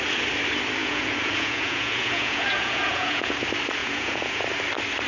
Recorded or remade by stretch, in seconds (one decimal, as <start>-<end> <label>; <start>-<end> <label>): 0.0-0.8 recorded; 0.8-3.3 remade; 3.3-3.8 recorded; 3.8-4.4 remade; 4.4-5.1 recorded